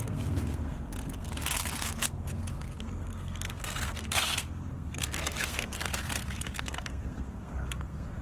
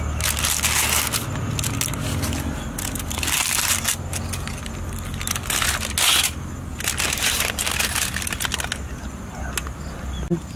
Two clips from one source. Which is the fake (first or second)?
first